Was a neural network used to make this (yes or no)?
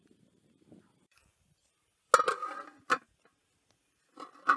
no